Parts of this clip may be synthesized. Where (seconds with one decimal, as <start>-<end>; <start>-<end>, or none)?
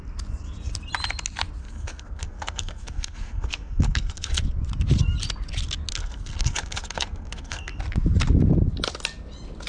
1.6-4.4; 5.9-7.8